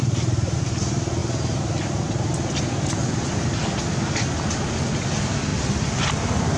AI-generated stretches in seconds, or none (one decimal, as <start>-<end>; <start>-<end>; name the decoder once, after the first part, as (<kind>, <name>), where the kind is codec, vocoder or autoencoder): 0.0-0.6 (vocoder, BigVGAN v2); 5.5-6.1